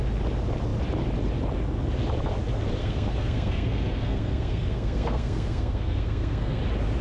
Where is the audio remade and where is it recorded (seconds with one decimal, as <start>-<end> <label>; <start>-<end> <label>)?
0.0-2.8 recorded; 2.8-6.6 remade; 6.6-7.0 recorded